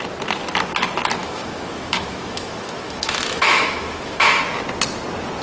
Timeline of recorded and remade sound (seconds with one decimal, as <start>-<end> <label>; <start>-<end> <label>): 0.0-1.2 recorded; 1.2-4.4 remade; 4.4-5.4 recorded